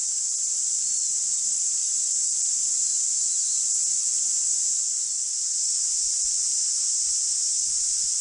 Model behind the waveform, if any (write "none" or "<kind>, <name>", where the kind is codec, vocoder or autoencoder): none